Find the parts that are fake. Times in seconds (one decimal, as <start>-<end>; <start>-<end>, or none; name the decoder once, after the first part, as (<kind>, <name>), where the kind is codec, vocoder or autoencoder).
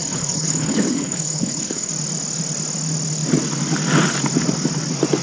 0.0-1.9 (codec, HILCodec)